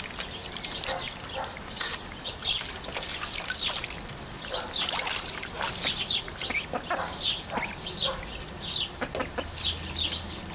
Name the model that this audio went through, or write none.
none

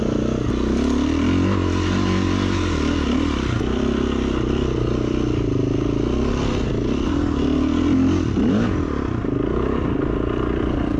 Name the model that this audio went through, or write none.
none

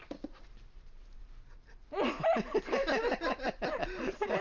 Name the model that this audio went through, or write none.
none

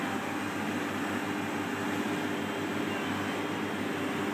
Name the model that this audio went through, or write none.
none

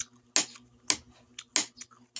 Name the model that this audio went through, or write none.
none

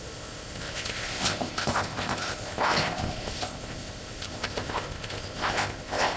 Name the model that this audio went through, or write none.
codec, ZipCodec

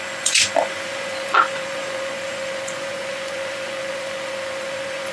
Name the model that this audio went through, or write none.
vocoder, Vocos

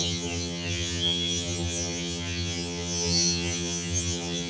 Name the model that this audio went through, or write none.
vocoder, HiFi-GAN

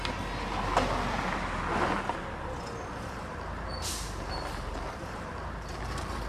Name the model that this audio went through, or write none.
none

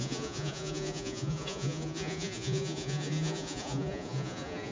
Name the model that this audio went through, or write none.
vocoder, Vocos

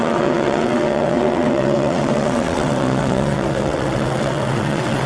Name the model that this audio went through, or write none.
vocoder, WaveNeXt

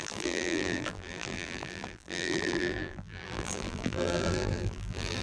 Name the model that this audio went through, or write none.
vocoder, BigVGAN v2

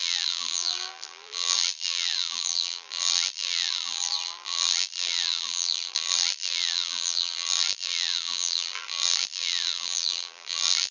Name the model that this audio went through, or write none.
vocoder, BigVGAN v2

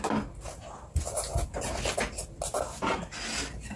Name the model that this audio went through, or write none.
none